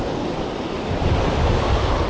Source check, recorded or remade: recorded